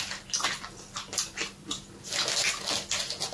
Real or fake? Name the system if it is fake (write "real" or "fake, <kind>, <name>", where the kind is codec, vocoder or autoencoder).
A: real